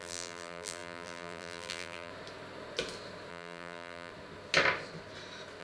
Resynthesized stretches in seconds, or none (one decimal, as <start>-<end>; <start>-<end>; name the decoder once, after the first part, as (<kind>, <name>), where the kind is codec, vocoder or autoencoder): 0.0-2.1 (vocoder, BigVGAN v2); 3.3-4.1